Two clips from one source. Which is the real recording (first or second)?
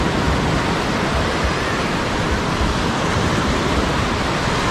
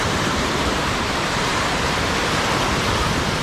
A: first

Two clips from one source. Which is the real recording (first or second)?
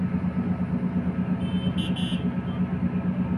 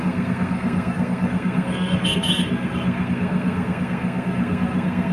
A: first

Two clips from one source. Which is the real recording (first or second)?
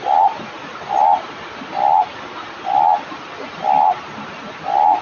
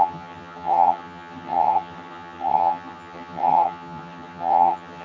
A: first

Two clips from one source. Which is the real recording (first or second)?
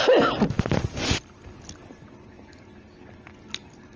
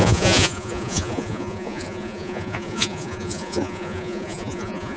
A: first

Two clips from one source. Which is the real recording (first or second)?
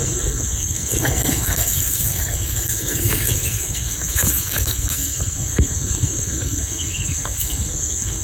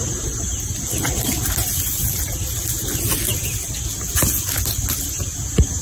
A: second